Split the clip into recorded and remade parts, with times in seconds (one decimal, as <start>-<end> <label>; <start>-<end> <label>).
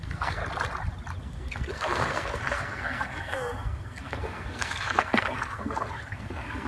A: 0.0-0.4 remade; 0.4-1.2 recorded; 1.2-6.7 remade